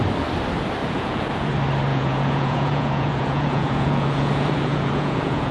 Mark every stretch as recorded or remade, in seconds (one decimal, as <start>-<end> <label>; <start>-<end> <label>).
0.0-0.8 recorded; 0.8-1.5 remade; 1.5-1.9 recorded; 1.9-5.5 remade